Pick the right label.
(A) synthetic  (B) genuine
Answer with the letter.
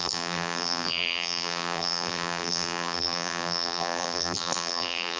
A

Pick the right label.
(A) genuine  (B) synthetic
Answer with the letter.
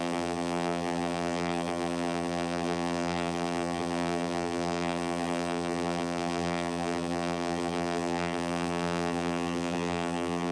B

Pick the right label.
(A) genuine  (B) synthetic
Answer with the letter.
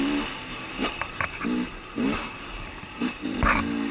B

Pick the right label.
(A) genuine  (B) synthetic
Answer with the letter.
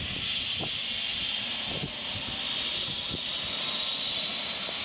A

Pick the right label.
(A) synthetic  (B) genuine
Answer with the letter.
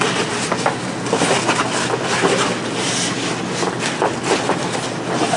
B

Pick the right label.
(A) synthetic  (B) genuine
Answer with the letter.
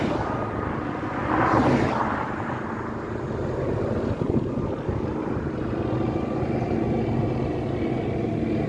B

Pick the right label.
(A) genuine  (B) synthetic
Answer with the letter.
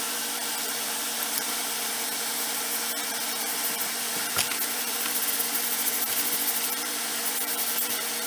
B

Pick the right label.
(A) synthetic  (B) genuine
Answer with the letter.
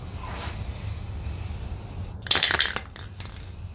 A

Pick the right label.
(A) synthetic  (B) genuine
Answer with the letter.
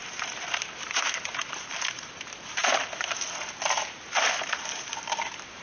A